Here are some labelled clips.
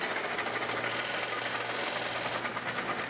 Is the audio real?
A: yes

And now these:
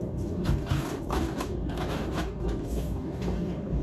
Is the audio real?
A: no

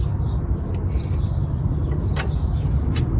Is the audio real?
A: yes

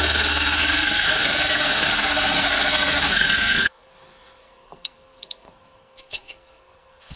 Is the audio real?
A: no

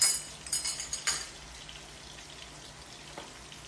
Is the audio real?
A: yes